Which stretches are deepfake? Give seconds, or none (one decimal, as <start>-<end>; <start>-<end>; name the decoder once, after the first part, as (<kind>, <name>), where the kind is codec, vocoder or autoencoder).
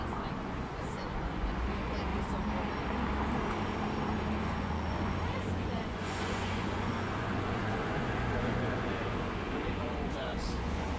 0.0-2.1 (vocoder, Vocos); 4.4-11.0